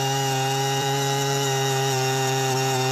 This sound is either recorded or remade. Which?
remade